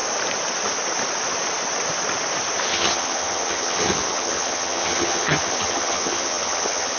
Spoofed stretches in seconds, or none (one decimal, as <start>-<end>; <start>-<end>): 2.7-7.0

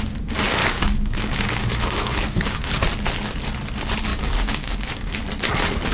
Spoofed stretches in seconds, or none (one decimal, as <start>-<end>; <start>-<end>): 0.6-2.7; 4.1-5.2

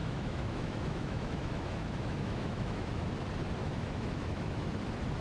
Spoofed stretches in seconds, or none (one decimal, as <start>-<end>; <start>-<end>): 0.0-3.1; 3.6-4.7

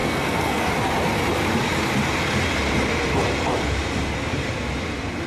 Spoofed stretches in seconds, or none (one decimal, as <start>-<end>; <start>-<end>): 0.0-0.7

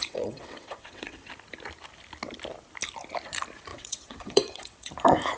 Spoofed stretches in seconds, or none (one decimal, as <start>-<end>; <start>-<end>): 0.0-1.3; 3.7-4.9

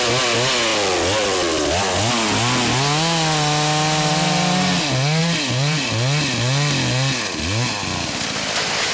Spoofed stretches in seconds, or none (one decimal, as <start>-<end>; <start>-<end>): 5.2-5.8

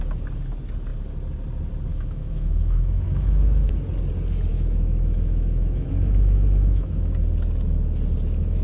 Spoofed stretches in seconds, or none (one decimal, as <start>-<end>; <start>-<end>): 1.9-3.7; 4.5-7.1